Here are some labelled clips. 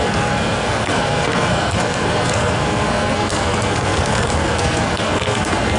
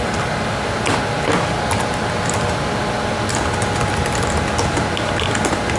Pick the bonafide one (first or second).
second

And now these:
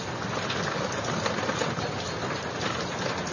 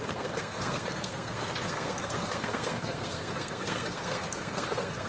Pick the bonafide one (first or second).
first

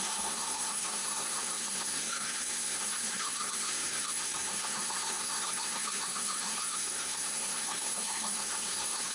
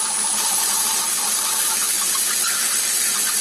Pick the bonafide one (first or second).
second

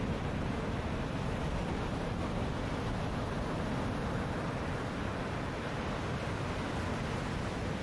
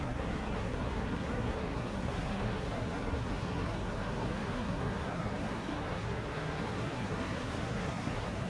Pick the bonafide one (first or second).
first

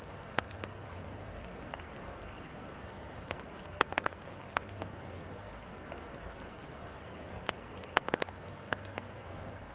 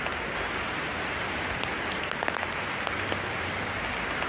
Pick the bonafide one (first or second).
second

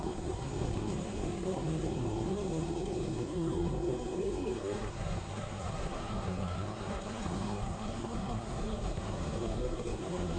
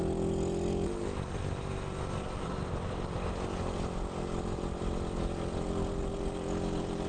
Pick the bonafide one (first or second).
second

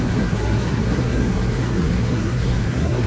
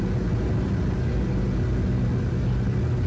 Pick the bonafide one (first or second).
second